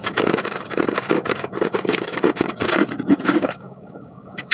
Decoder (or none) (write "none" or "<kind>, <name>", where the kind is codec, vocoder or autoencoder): codec, DAC